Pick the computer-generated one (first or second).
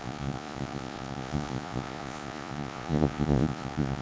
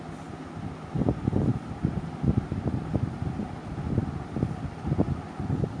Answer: first